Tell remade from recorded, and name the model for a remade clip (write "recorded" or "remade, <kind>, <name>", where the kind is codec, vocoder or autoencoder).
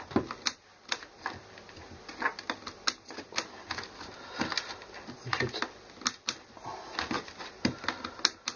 recorded